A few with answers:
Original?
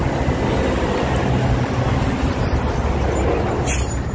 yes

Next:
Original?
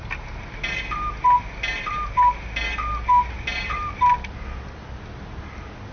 yes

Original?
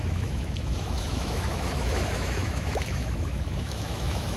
no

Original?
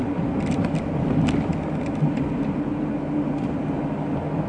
yes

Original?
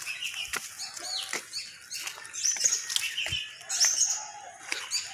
yes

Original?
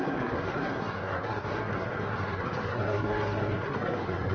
no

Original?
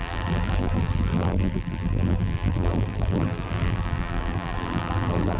no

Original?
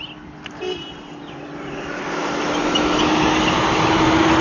yes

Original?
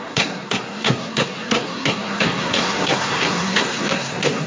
no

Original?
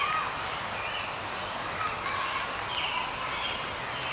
yes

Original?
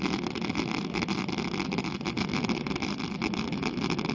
yes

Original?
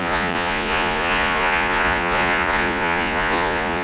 no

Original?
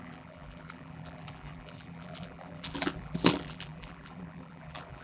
no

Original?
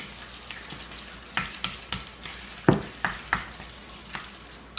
yes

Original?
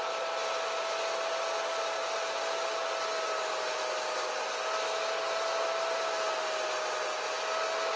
yes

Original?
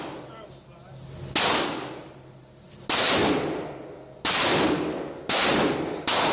yes